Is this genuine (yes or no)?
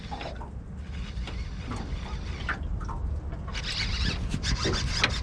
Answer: yes